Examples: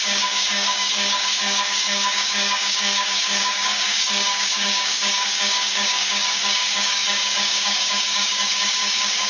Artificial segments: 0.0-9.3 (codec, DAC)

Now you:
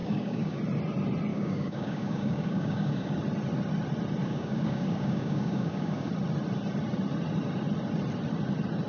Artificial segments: 0.0-0.6 (codec, DAC); 1.3-3.1; 4.2-6.1

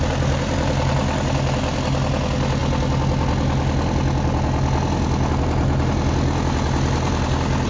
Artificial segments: none